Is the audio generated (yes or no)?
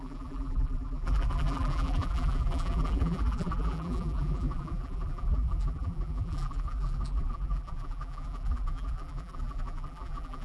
yes